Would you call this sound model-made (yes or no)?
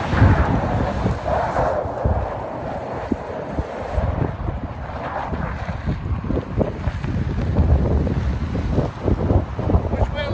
no